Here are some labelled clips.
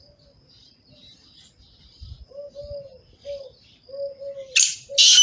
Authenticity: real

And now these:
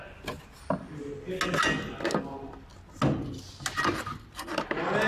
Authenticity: real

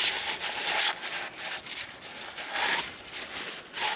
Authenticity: real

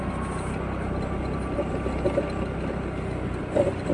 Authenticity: real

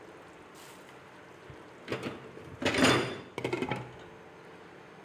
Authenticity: real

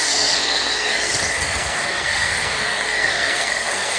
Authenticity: fake